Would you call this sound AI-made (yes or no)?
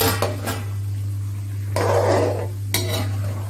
no